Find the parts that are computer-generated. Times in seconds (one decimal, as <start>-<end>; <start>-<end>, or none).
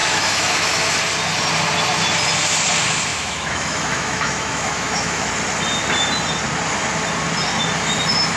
0.0-1.0; 3.1-5.3